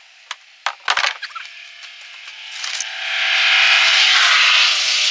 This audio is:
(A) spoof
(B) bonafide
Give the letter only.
B